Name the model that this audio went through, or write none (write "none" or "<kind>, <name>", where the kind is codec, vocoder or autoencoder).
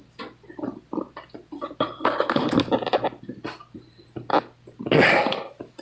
none